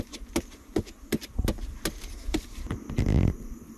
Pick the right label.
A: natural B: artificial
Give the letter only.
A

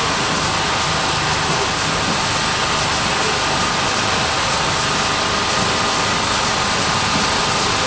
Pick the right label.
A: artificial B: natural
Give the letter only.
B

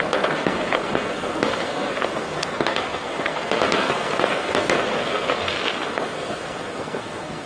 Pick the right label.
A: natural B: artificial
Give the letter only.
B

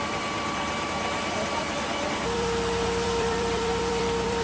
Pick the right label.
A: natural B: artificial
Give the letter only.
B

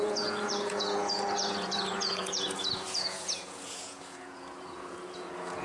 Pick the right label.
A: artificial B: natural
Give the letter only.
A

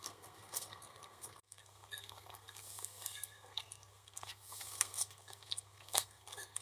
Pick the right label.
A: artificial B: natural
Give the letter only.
A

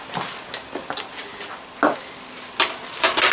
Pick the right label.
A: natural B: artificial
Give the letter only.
A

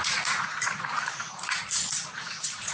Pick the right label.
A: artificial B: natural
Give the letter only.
A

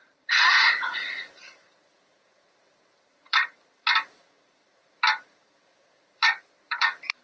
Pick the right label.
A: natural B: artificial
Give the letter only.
B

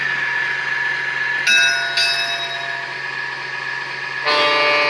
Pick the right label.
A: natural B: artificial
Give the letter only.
A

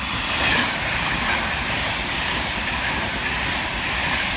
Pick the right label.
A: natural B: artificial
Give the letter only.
B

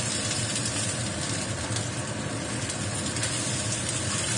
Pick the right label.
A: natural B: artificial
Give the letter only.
A